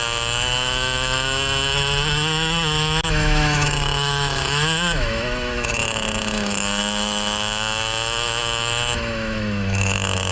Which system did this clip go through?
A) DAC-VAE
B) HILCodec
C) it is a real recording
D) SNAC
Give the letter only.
A